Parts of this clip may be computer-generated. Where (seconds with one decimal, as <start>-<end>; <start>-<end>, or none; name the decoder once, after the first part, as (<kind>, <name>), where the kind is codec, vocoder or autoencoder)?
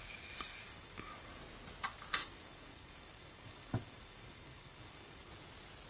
0.7-1.4 (codec, DAC); 2.2-5.3